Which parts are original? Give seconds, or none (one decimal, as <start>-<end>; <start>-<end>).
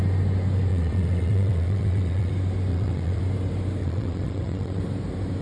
0.0-0.7; 2.3-2.7; 3.2-3.8; 4.8-5.4